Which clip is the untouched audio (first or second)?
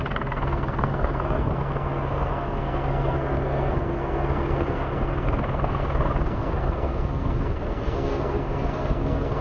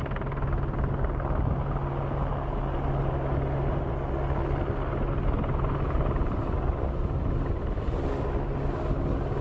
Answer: second